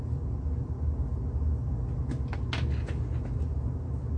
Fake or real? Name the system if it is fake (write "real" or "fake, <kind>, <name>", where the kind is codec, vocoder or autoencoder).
real